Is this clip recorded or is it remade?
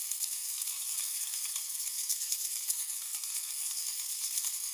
remade